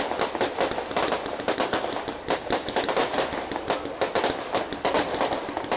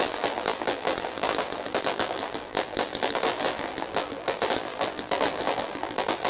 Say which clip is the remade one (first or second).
second